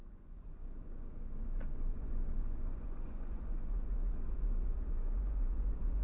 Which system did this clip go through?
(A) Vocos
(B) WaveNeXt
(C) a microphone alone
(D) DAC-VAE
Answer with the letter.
A